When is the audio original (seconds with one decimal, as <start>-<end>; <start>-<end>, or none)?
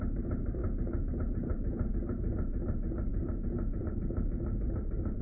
0.6-1.1